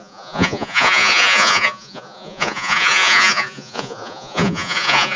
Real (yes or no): no